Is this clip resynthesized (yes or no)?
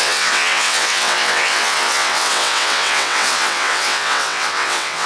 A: yes